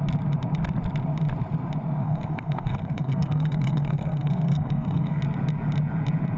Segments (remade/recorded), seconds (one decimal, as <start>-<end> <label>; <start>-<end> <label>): 0.0-2.0 recorded; 2.0-5.2 remade; 5.2-6.4 recorded